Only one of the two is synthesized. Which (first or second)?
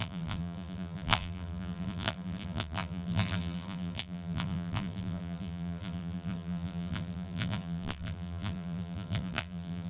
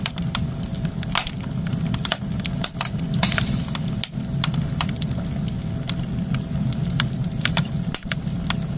first